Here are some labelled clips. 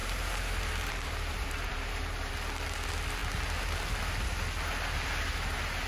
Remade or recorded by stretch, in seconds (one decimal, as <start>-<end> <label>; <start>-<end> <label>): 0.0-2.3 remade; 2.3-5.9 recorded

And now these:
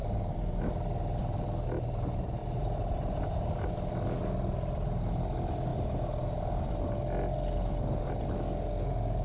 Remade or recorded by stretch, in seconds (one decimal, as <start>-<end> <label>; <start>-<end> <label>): 0.0-0.7 remade; 0.7-2.4 recorded; 2.4-3.7 remade; 3.7-9.2 recorded

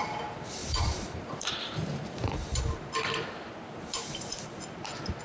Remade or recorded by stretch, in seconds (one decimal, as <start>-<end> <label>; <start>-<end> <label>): 0.0-0.6 recorded; 0.6-2.6 remade; 2.6-3.7 recorded; 3.7-4.5 remade; 4.5-5.2 recorded

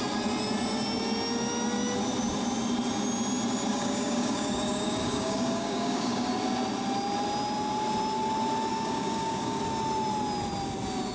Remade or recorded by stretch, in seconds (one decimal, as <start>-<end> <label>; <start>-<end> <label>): 0.0-3.7 recorded; 3.7-6.3 remade; 6.3-8.7 recorded; 8.7-9.6 remade; 9.6-11.1 recorded

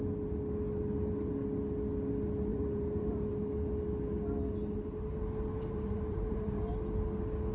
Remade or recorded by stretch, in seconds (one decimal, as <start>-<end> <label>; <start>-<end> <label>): 0.0-2.5 recorded; 2.5-3.3 remade; 3.3-5.5 recorded; 5.5-6.7 remade; 6.7-7.5 recorded

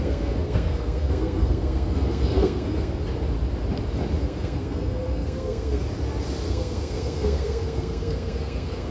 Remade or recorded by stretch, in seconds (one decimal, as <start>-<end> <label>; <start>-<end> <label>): 0.0-3.0 remade; 3.0-4.2 recorded; 4.2-5.8 remade; 5.8-6.5 recorded; 6.5-8.9 remade